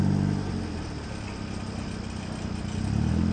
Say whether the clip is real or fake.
real